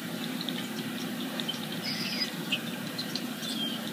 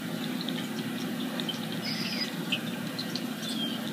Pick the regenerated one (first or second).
first